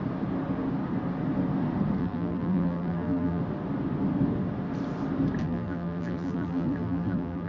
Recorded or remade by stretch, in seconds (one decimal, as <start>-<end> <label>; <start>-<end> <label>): 0.0-2.0 recorded; 2.0-3.4 remade; 3.4-5.4 recorded; 5.4-7.5 remade